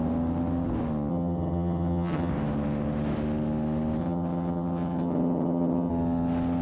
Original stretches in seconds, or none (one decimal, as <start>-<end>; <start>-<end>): 0.0-1.1; 2.3-4.0; 5.9-6.6